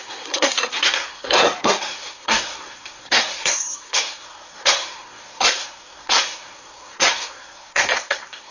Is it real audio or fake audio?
fake